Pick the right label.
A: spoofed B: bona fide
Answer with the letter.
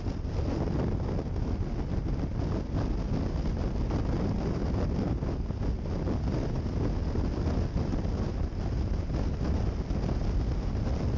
B